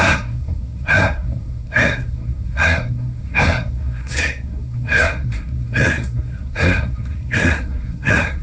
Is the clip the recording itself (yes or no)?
no